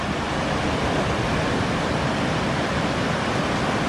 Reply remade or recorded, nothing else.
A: recorded